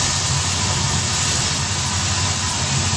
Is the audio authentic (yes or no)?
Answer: yes